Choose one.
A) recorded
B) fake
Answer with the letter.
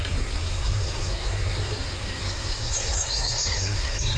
B